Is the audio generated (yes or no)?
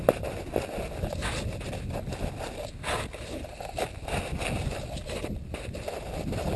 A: no